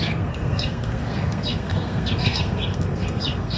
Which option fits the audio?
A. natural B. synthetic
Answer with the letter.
B